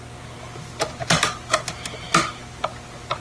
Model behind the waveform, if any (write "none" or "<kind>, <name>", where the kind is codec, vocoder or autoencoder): none